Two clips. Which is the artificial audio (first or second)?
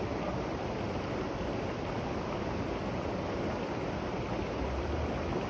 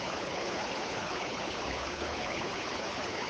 second